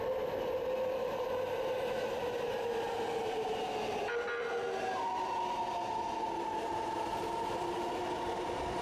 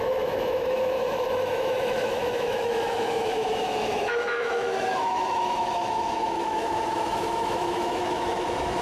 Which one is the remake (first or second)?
second